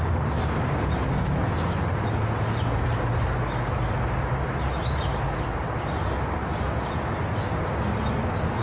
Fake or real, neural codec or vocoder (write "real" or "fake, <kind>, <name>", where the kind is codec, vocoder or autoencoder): real